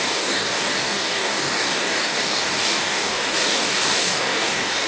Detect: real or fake fake